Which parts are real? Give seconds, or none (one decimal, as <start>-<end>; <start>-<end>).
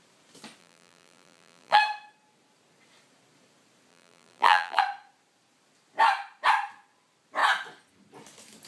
0.0-0.6; 1.8-3.9; 4.8-8.7